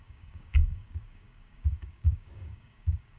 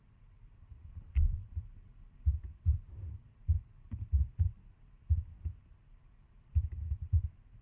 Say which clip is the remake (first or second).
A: first